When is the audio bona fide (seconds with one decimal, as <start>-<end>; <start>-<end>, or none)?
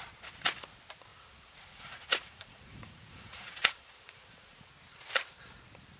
0.0-1.1; 4.7-6.0